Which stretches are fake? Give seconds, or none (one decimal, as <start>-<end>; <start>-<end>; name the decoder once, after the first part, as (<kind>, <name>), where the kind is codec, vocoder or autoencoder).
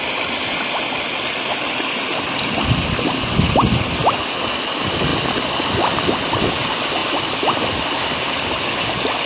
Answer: none